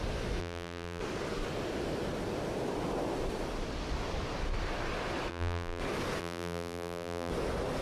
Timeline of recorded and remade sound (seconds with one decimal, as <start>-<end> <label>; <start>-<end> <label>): 0.0-0.4 recorded; 0.4-1.0 remade; 1.0-5.3 recorded; 5.3-5.8 remade; 5.8-6.2 recorded; 6.2-7.3 remade; 7.3-7.8 recorded